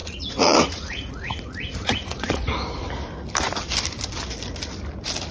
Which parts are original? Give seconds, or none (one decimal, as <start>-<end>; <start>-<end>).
2.6-5.3